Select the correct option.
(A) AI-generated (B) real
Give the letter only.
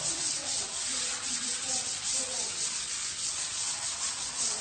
A